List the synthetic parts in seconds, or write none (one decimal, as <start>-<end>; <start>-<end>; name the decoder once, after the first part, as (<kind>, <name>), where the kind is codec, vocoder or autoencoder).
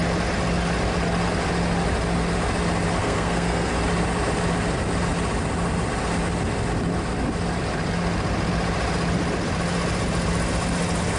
3.0-3.7 (codec, SNAC)